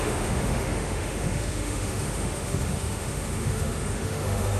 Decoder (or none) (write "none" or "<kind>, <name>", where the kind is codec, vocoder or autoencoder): autoencoder, DAC-VAE